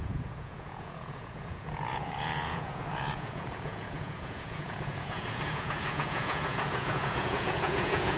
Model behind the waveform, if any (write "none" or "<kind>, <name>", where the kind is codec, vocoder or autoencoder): vocoder, Vocos